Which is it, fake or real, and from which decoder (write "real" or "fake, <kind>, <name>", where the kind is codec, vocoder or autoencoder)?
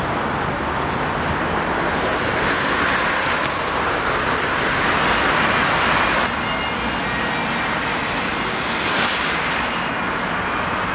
real